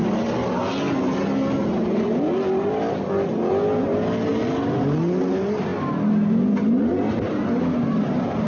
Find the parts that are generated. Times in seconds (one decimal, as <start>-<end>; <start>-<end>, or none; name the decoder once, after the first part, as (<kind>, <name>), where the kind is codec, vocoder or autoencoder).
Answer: none